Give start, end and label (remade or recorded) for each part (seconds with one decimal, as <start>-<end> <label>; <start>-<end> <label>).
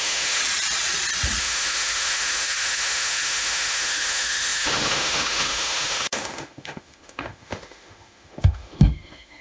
0.0-0.4 remade; 0.4-1.4 recorded; 1.4-9.4 remade